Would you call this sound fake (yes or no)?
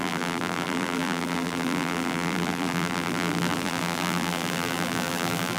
yes